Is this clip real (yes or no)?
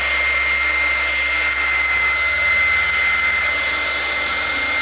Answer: yes